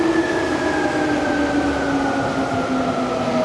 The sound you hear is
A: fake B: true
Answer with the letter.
B